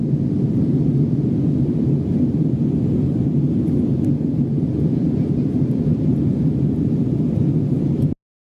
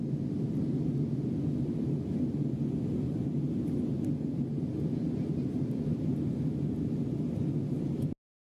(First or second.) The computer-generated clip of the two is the first